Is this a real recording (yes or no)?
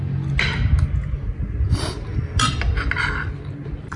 yes